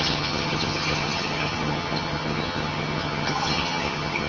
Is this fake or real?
fake